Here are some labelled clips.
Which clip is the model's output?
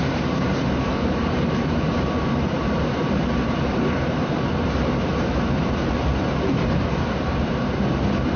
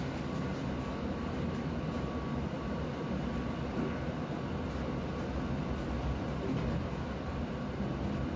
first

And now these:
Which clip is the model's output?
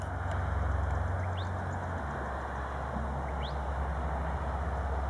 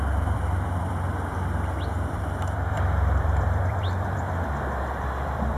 second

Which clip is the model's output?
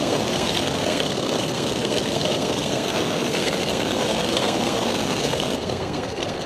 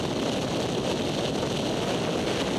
first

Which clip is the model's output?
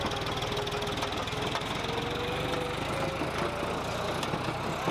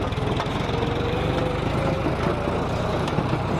second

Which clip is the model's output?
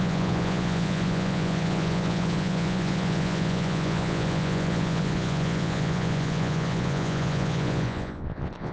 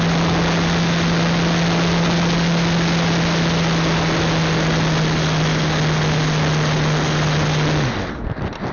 first